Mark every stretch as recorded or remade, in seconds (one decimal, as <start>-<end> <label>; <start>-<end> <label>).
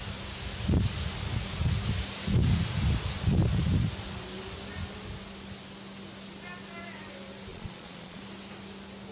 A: 0.0-7.5 recorded; 7.5-8.2 remade; 8.2-9.1 recorded